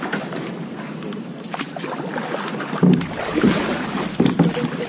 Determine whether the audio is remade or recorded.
recorded